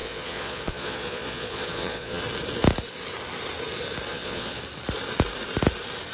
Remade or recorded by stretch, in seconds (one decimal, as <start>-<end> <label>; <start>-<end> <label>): 0.0-2.2 remade; 2.2-4.1 recorded; 4.1-4.6 remade; 4.6-6.1 recorded